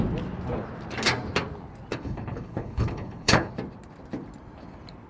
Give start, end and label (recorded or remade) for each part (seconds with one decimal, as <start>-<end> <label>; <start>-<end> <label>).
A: 0.0-1.9 recorded; 1.9-3.5 remade; 3.5-5.1 recorded